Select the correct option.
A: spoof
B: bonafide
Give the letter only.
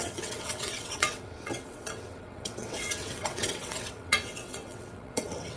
A